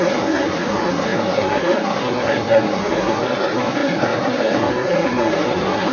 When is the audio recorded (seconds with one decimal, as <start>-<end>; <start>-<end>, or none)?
none